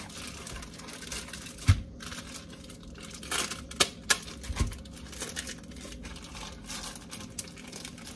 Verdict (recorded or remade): recorded